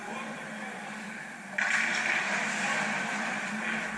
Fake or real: fake